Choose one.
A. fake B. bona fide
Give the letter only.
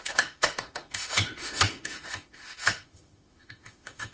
A